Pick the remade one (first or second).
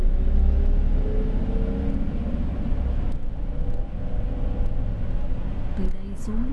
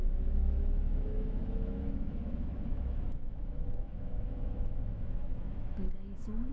second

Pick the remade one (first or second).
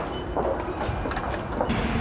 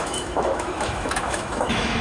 second